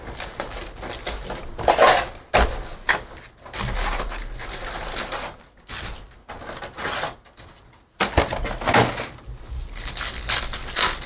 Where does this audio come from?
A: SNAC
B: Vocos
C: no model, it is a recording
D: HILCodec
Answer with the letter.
C